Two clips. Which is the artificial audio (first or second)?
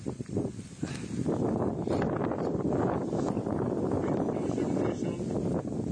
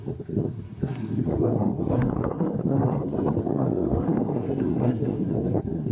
second